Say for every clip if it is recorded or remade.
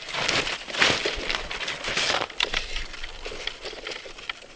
remade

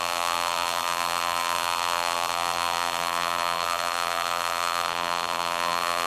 remade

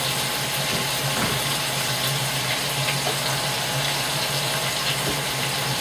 recorded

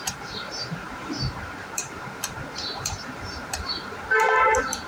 remade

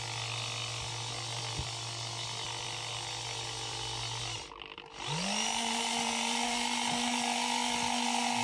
recorded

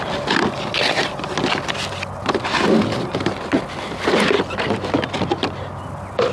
recorded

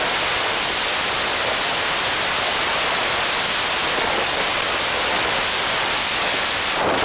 remade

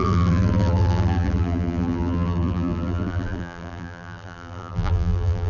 remade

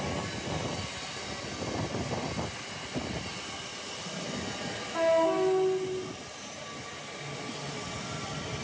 recorded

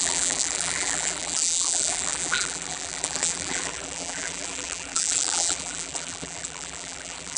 remade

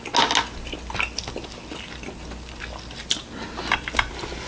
recorded